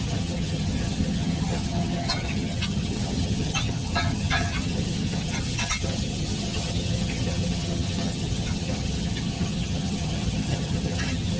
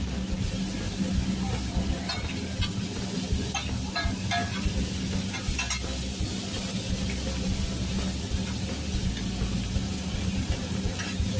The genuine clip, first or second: second